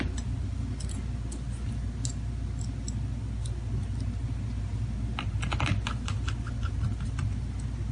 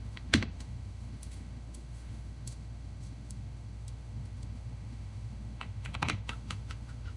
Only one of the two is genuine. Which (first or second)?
first